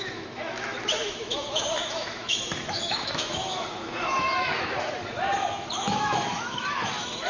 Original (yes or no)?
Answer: no